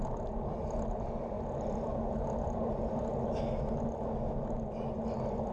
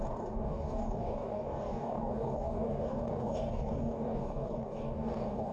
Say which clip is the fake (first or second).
second